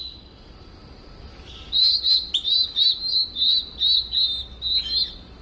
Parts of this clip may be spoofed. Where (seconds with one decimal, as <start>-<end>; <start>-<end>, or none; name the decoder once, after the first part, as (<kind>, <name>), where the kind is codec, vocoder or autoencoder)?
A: none